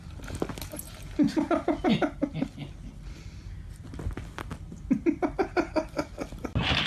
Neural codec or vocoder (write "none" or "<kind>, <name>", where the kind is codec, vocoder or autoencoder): none